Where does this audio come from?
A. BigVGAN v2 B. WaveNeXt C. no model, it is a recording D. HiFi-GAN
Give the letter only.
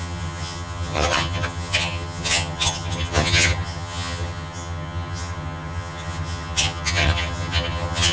D